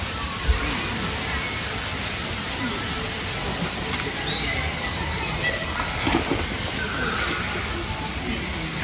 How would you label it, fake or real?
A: real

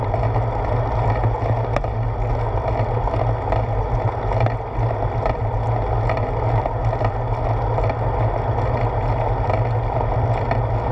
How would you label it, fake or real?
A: real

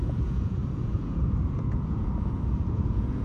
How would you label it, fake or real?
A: fake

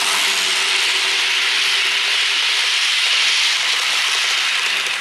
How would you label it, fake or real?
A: real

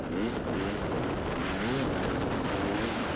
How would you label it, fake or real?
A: real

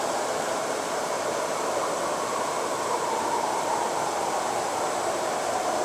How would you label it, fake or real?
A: fake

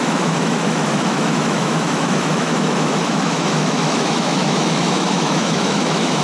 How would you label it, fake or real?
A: fake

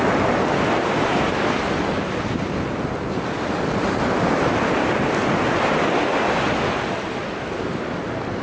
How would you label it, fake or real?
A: real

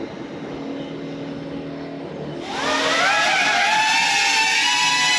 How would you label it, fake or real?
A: real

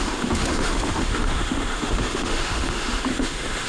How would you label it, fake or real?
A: fake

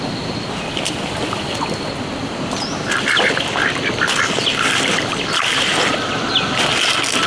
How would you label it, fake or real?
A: real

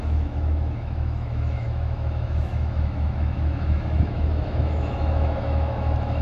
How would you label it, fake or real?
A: fake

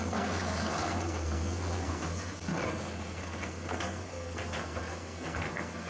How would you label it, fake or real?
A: fake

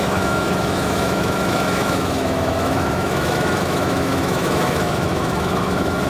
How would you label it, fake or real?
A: fake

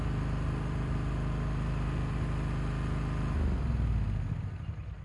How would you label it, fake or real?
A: real